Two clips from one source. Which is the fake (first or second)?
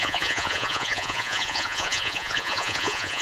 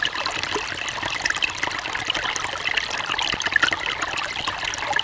first